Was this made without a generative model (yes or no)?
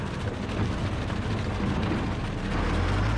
yes